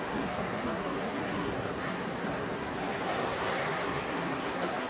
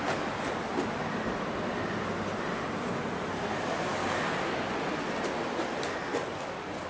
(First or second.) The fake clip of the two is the first